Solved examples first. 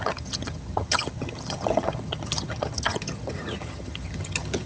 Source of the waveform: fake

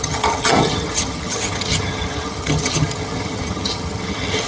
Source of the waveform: fake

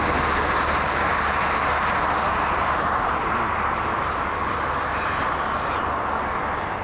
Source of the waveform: real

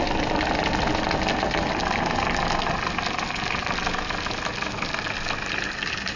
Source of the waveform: real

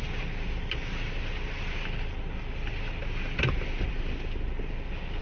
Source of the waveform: real